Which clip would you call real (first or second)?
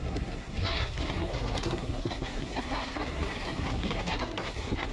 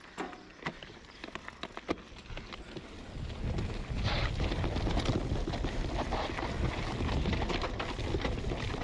second